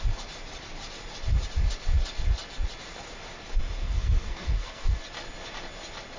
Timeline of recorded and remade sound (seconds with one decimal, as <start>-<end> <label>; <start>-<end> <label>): 0.0-3.8 recorded; 3.8-5.0 remade; 5.0-6.2 recorded